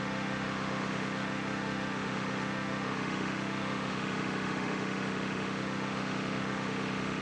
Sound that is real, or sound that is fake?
fake